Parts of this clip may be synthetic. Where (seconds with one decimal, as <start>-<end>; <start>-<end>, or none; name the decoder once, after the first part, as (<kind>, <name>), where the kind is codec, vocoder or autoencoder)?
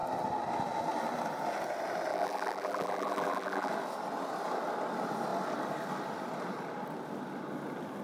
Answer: 2.1-3.7 (vocoder, BigVGAN v2)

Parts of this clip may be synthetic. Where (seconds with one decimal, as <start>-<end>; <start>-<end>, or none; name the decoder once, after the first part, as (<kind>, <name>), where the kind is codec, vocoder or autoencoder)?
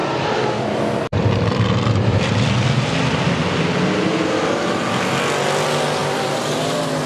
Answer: 0.0-2.5 (vocoder, BigVGAN v2); 6.0-7.1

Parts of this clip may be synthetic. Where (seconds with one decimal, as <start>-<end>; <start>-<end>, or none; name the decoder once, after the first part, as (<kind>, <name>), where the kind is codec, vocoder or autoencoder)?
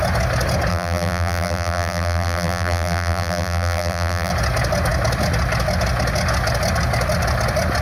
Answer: 0.7-4.3 (vocoder, BigVGAN v2)